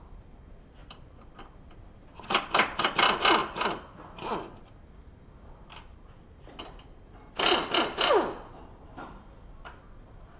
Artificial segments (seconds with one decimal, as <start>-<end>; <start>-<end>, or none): 0.8-2.4